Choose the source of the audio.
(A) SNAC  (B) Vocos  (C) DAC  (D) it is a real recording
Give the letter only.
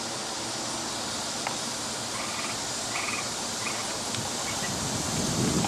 D